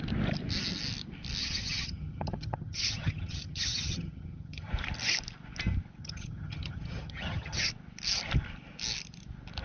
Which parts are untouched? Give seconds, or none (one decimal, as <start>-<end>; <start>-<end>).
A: 0.0-1.4; 4.7-6.0; 7.7-9.6